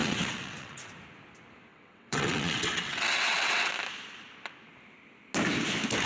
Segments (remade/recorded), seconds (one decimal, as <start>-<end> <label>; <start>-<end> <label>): 0.0-0.9 remade; 0.9-1.7 recorded; 1.7-3.7 remade; 3.7-6.1 recorded